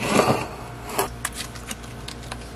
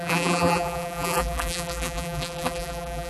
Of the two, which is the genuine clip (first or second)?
first